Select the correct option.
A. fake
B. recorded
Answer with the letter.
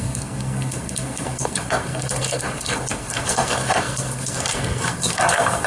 A